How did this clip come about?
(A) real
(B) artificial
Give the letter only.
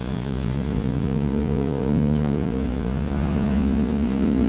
B